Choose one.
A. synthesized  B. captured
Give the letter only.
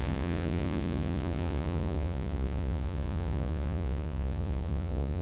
A